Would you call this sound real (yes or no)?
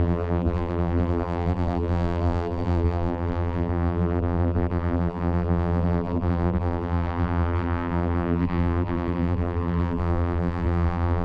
no